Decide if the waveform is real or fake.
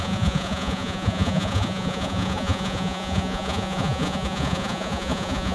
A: fake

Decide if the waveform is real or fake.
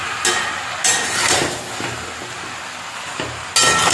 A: real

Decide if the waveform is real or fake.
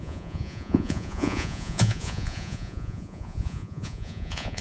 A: fake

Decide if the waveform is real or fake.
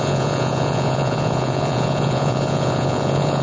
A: fake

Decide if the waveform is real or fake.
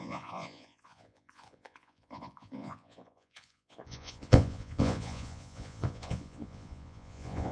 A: fake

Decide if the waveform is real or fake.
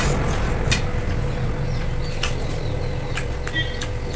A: real